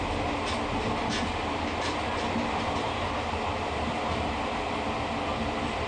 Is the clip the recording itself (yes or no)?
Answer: yes